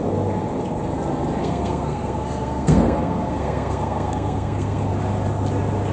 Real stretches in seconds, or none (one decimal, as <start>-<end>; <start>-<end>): 0.0-1.4; 4.9-5.9